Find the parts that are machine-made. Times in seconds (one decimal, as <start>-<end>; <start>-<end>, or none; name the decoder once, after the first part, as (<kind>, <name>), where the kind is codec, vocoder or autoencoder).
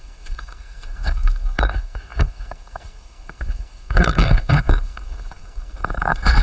0.0-6.4 (codec, SNAC)